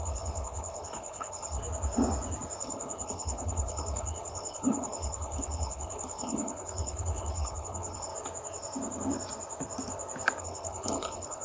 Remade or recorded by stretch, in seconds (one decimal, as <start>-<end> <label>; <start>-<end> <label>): 0.0-1.6 remade; 1.6-2.6 recorded; 2.6-8.1 remade; 8.1-10.4 recorded; 10.4-11.4 remade